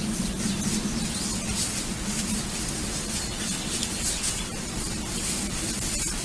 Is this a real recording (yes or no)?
no